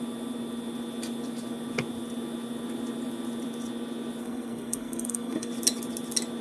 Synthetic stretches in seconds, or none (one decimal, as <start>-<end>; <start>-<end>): 4.2-5.5